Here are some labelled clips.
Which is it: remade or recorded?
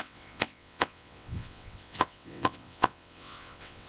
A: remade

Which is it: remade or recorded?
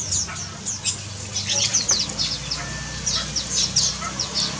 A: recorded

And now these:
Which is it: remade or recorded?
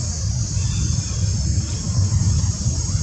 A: recorded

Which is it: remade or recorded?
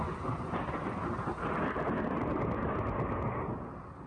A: recorded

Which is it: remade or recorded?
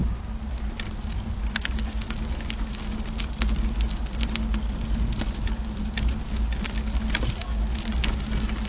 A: recorded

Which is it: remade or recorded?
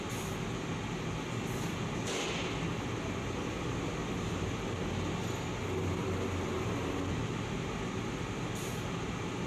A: recorded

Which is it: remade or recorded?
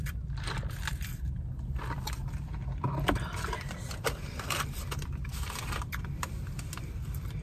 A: remade